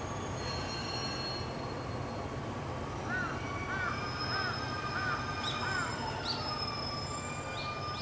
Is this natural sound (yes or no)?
yes